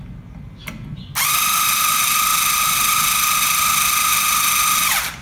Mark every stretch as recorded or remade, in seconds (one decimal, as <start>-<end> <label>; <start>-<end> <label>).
0.0-5.2 recorded